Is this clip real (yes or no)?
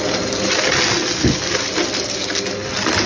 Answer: yes